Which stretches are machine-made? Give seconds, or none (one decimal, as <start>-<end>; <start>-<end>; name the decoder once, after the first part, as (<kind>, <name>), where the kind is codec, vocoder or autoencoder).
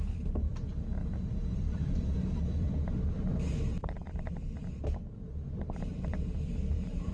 0.0-0.5 (vocoder, BigVGAN v2); 1.5-4.0; 4.8-7.1